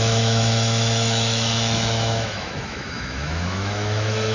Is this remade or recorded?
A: remade